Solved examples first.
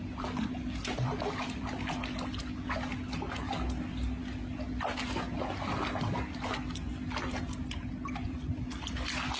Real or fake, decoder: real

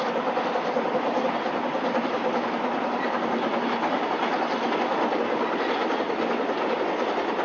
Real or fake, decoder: real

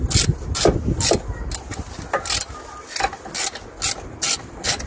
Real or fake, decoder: real